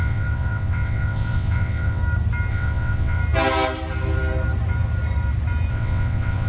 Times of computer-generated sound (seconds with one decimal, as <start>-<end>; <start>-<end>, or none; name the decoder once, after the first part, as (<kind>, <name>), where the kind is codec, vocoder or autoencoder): 0.0-2.0 (vocoder, WaveNeXt); 2.5-3.2; 5.7-6.5